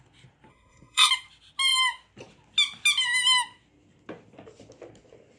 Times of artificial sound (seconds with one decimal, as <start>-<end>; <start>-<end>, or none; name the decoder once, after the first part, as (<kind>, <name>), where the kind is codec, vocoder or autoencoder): 0.5-1.1 (codec, SNAC)